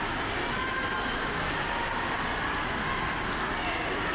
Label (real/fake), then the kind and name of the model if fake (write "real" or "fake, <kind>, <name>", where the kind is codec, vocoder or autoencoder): real